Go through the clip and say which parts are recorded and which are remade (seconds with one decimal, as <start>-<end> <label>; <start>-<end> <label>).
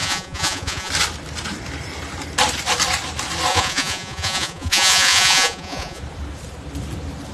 0.0-0.9 remade; 0.9-3.5 recorded; 3.5-6.0 remade; 6.0-7.3 recorded